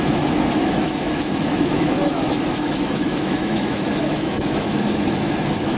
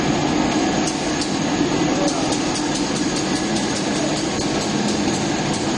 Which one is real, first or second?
second